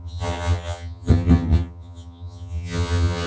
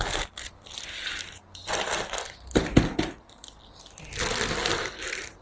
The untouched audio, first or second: second